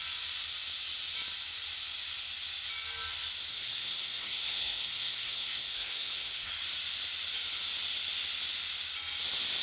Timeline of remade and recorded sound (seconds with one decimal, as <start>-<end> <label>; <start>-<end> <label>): 0.0-3.5 recorded; 3.5-6.5 remade; 6.5-9.6 recorded